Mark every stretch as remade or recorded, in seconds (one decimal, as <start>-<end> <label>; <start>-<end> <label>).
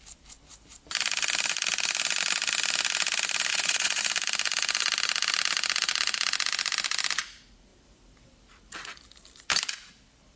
0.0-3.5 recorded; 3.5-4.0 remade; 4.0-10.4 recorded